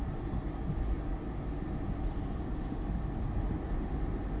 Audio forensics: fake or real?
real